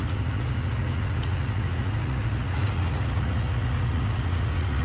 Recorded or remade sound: remade